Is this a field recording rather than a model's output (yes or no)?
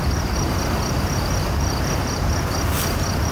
no